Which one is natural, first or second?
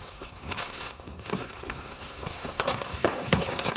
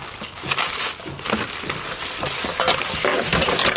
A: second